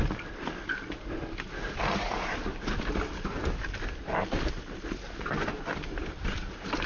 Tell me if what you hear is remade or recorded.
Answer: recorded